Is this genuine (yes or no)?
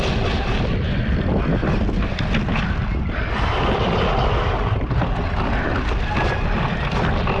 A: yes